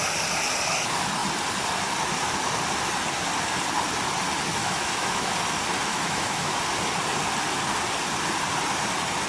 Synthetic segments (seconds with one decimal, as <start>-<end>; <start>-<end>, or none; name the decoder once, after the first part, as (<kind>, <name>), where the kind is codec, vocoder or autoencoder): 4.6-5.3 (autoencoder, DAC-VAE); 5.9-6.6